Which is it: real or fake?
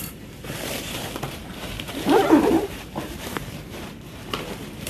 fake